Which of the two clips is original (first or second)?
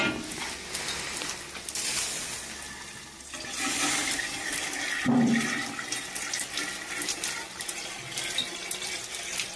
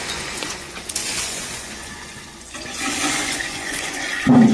first